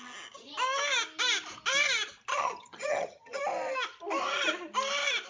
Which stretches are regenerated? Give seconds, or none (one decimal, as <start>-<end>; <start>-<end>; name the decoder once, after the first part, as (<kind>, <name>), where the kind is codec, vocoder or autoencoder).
2.3-3.4 (vocoder, HiFi-GAN)